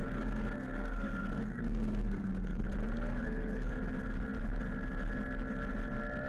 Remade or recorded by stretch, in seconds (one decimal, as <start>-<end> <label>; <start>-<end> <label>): 0.0-2.6 remade; 2.6-3.1 recorded; 3.1-3.7 remade; 3.7-6.3 recorded